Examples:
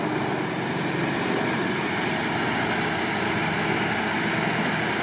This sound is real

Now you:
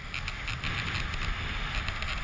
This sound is real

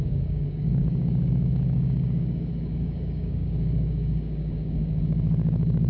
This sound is fake